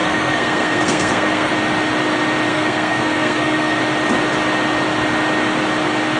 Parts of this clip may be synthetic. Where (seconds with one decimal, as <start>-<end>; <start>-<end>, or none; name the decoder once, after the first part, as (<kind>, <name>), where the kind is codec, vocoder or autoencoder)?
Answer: 0.0-1.5 (codec, SNAC); 2.5-3.8